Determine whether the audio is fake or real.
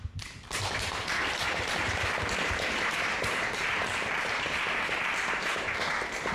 fake